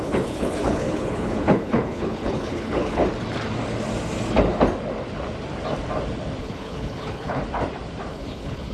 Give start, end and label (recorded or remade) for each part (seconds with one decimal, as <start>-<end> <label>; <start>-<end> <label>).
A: 0.0-3.0 remade; 3.0-6.4 recorded; 6.4-7.4 remade; 7.4-8.1 recorded; 8.1-8.7 remade